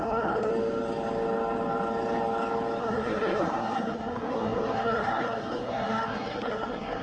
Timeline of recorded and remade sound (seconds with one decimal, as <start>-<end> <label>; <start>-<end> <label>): 0.0-0.5 remade; 0.5-2.8 recorded; 2.8-7.0 remade